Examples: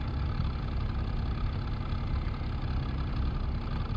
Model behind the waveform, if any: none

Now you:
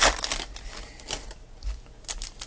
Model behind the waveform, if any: none